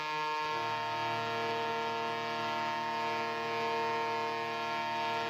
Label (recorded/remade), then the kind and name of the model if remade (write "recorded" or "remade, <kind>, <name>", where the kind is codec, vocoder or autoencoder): recorded